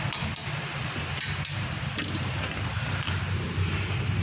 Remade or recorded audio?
recorded